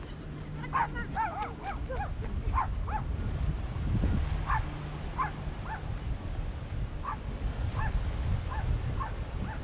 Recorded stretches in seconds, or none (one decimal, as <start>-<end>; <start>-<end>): 0.0-9.6